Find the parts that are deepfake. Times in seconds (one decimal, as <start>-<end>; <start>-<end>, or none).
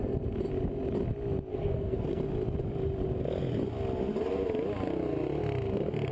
1.5-2.2